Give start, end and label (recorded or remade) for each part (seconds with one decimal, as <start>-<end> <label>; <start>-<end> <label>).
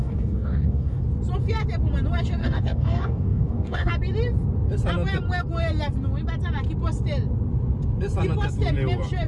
0.0-1.0 remade; 1.0-2.4 recorded; 2.4-3.9 remade; 3.9-9.3 recorded